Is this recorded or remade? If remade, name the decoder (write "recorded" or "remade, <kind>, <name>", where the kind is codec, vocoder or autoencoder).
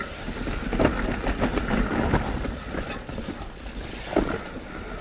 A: recorded